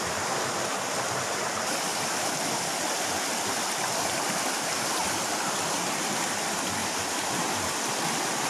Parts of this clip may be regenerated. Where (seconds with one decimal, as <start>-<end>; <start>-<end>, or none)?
none